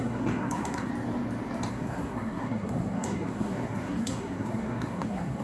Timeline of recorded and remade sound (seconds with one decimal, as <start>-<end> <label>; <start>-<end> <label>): 0.0-0.9 remade; 0.9-1.7 recorded; 1.7-5.4 remade